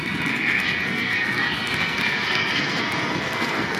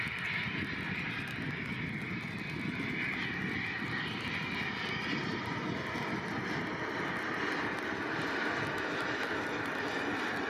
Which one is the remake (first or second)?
first